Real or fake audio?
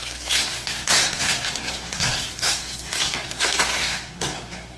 fake